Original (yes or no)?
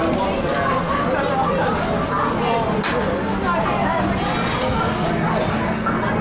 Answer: yes